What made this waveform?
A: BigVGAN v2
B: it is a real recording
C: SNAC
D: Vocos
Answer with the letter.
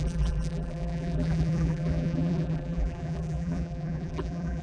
A